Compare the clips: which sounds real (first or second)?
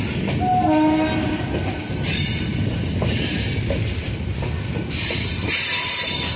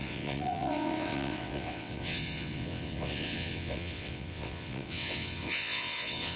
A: first